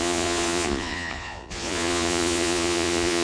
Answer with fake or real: fake